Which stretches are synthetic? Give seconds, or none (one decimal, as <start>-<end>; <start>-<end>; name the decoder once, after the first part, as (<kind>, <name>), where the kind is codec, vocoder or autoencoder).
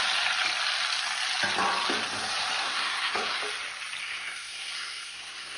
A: 2.6-3.4 (codec, SNAC); 4.0-5.6